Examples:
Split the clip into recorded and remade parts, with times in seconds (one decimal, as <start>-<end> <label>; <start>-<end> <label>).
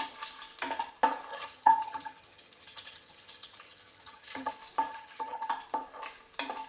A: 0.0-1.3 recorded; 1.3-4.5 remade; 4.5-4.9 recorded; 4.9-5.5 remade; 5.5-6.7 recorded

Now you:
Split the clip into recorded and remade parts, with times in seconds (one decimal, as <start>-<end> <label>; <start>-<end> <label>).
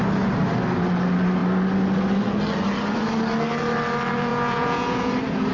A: 0.0-4.3 recorded; 4.3-5.1 remade; 5.1-5.5 recorded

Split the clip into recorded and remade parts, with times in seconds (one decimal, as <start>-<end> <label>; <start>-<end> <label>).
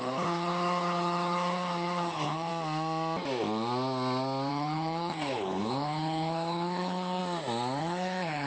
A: 0.0-2.5 remade; 2.5-4.5 recorded; 4.5-7.2 remade; 7.2-7.8 recorded; 7.8-8.5 remade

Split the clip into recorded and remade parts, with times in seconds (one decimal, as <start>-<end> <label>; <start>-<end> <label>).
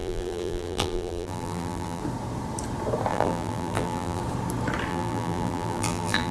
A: 0.0-2.0 remade; 2.0-3.1 recorded; 3.1-4.2 remade; 4.2-4.9 recorded; 4.9-6.3 remade